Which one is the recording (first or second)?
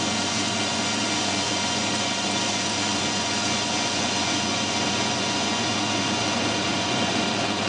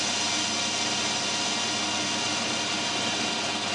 second